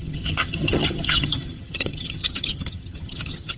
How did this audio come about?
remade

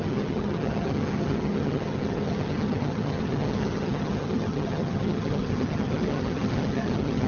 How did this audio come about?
remade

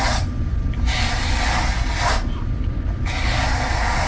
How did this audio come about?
recorded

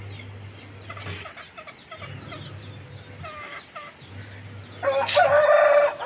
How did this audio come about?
recorded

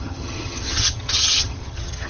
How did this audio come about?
remade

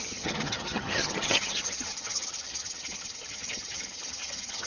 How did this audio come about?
remade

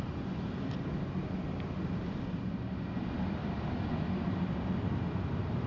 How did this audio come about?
recorded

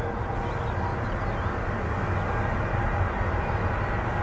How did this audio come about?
recorded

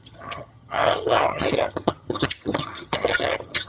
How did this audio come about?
remade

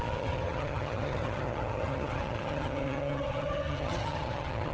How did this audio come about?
remade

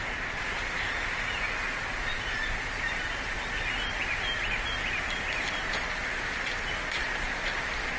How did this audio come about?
recorded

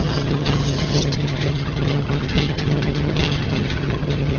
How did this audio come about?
remade